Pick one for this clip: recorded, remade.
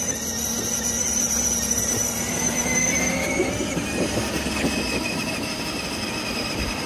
recorded